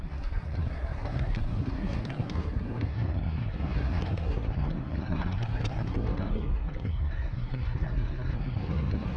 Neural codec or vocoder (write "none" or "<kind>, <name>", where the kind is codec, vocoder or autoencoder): codec, SNAC